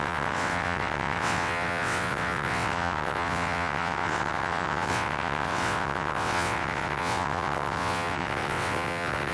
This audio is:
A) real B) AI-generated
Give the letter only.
B